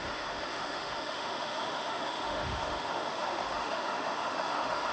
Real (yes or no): no